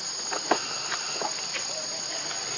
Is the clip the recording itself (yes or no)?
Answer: yes